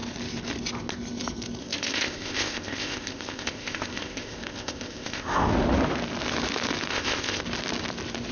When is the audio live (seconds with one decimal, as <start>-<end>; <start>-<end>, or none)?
0.0-1.6; 5.5-6.9; 7.4-8.3